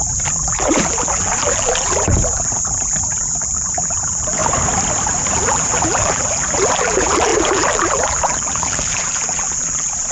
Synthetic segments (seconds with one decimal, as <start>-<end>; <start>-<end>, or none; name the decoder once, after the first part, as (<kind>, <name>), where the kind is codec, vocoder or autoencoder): 0.0-4.4 (vocoder, BigVGAN v2); 5.3-10.1